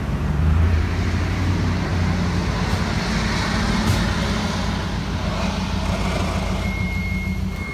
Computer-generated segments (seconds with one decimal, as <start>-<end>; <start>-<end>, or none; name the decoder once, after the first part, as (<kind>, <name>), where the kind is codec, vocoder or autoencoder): 0.0-1.9 (vocoder, BigVGAN v2); 6.5-7.7